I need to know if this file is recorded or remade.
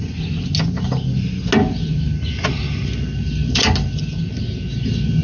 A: recorded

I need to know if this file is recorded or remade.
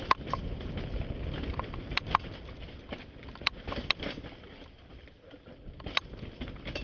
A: recorded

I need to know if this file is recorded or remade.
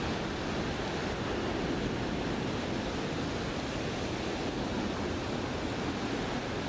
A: recorded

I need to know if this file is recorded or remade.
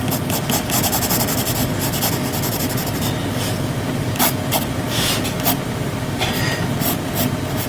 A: recorded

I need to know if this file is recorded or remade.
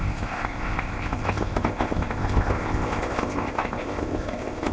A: remade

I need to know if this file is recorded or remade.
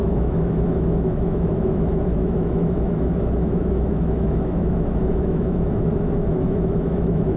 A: remade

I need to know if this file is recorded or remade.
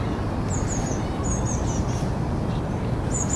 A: recorded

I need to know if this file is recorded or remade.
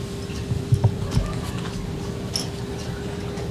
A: recorded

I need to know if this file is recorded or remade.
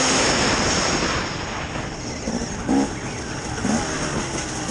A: recorded